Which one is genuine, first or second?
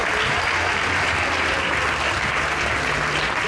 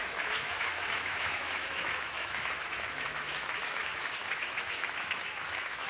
first